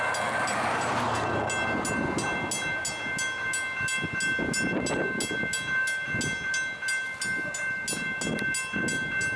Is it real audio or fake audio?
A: real